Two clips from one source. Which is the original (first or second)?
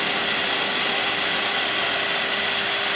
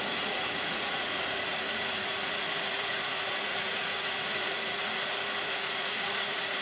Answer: first